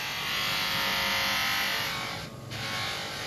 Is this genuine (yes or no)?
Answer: yes